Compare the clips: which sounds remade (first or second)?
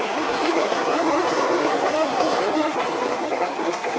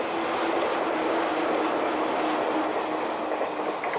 first